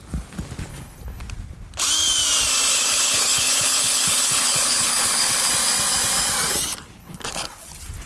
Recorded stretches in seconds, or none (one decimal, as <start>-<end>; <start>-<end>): 0.0-0.7; 1.2-2.7; 5.5-7.0; 7.6-8.1